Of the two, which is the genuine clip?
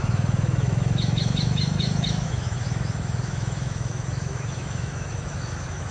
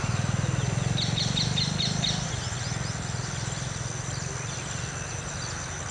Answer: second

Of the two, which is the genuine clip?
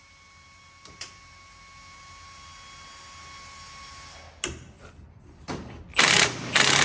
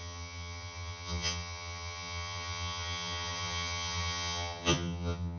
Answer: first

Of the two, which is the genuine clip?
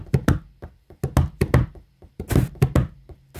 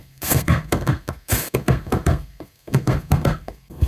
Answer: first